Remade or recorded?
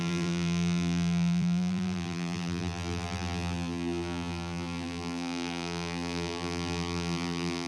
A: remade